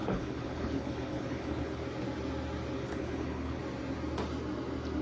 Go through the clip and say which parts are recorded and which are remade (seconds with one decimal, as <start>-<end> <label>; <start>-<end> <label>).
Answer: 0.0-1.8 remade; 1.8-2.8 recorded; 2.8-3.6 remade; 3.6-5.0 recorded